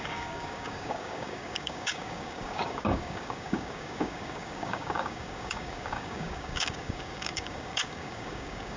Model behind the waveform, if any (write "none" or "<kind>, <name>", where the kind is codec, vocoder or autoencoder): codec, DAC